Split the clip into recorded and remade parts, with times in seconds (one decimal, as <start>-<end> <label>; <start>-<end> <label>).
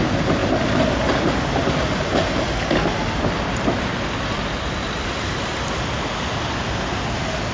0.0-7.5 recorded